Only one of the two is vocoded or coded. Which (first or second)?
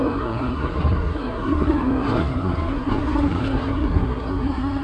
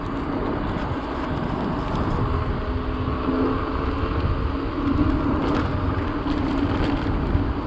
first